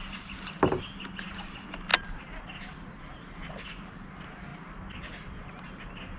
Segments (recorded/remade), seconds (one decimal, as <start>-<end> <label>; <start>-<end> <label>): 0.0-6.2 recorded